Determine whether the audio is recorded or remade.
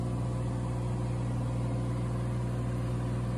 recorded